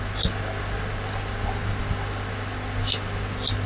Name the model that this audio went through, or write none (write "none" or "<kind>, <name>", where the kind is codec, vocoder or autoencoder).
none